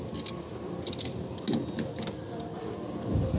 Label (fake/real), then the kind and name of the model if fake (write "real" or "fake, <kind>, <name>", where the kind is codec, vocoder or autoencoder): real